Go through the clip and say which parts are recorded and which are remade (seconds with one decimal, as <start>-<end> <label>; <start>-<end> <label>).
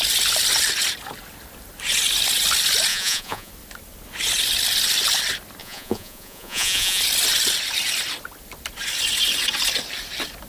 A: 0.0-2.9 recorded; 2.9-3.5 remade; 3.5-5.6 recorded; 5.6-7.0 remade; 7.0-10.5 recorded